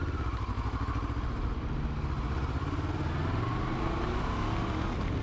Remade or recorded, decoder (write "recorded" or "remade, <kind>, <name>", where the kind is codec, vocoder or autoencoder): recorded